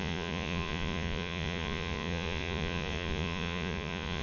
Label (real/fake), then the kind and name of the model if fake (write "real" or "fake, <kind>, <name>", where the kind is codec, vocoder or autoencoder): fake, vocoder, Vocos